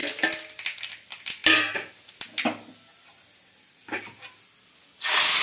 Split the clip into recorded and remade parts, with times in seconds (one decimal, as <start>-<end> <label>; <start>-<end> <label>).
0.0-5.4 recorded